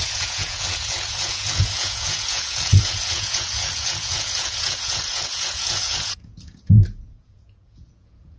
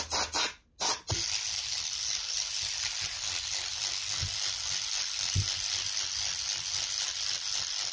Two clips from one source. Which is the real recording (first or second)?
second